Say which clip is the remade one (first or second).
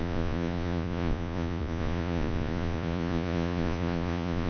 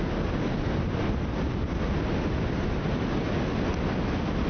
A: first